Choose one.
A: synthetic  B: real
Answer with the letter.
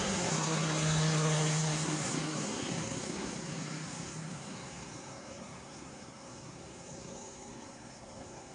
A